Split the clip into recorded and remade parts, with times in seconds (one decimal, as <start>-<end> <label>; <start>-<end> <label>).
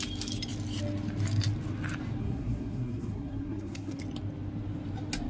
0.0-2.2 recorded; 2.2-4.0 remade; 4.0-5.3 recorded